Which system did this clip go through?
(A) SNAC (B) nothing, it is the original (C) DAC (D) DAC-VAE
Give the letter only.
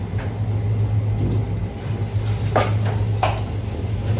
B